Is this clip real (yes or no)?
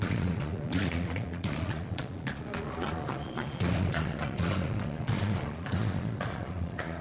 no